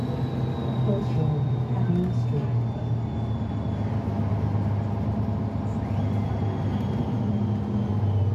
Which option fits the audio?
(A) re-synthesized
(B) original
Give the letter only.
B